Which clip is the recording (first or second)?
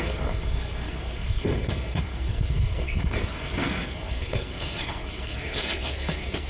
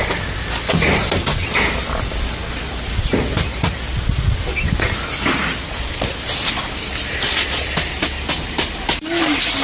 second